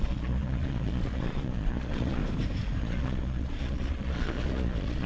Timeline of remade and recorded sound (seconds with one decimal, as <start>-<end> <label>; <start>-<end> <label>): 0.0-2.2 remade; 2.2-2.8 recorded; 2.8-5.1 remade